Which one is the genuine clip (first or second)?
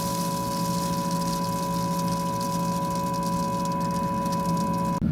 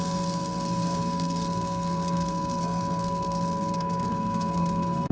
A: first